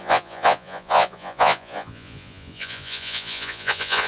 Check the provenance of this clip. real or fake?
fake